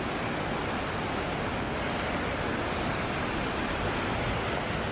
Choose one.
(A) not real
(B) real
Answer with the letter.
B